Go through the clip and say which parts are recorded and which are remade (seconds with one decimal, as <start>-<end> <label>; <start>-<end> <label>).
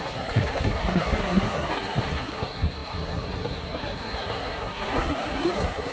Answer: 0.0-5.9 remade